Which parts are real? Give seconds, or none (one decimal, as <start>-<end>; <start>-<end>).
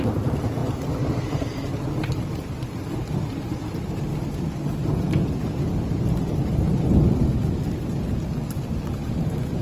0.0-9.6